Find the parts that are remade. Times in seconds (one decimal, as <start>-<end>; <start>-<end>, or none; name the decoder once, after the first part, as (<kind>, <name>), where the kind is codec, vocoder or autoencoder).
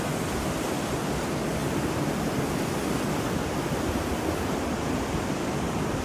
none